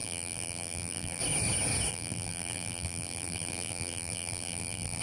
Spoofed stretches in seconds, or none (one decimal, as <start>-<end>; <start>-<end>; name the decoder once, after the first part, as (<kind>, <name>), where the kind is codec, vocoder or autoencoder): 0.0-1.2 (vocoder, BigVGAN v2); 1.9-5.0